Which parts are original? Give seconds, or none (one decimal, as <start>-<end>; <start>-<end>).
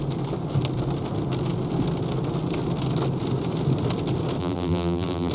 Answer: 0.0-4.4